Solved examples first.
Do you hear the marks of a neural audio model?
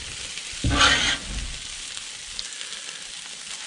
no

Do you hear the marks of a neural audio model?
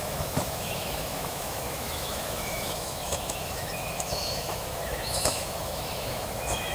yes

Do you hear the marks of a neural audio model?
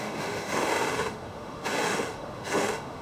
yes